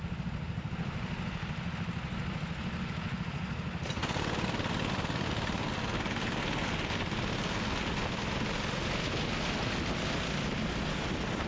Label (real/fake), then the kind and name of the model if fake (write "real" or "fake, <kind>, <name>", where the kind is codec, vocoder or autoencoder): real